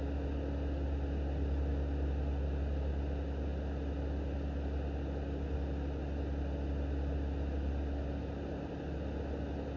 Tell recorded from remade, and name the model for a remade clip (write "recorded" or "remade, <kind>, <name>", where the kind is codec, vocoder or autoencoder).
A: recorded